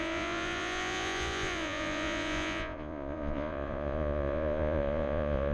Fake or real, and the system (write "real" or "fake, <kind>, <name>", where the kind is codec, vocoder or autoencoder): fake, vocoder, Vocos